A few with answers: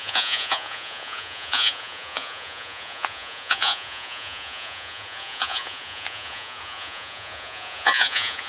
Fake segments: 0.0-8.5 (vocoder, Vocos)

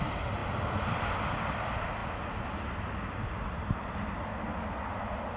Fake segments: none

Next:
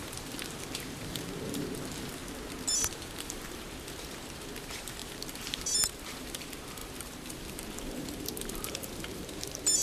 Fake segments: 0.0-2.2 (vocoder, BigVGAN v2); 2.7-9.8